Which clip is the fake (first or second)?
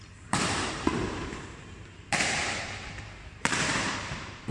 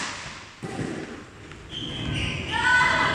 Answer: first